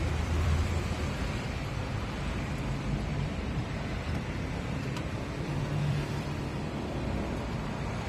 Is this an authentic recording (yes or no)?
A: no